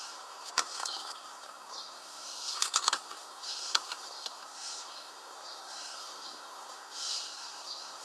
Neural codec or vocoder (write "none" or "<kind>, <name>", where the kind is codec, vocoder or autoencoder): codec, SNAC